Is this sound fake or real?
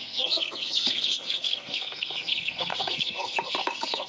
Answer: fake